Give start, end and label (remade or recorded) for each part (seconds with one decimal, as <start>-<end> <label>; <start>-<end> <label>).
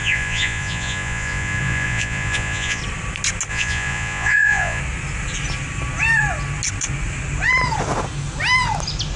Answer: 0.0-2.8 remade; 2.8-3.5 recorded; 3.5-4.8 remade; 4.8-9.2 recorded